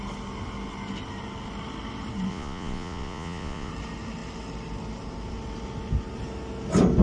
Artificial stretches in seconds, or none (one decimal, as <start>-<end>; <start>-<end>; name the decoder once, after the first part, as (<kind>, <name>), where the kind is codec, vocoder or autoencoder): 2.3-3.7 (vocoder, Vocos)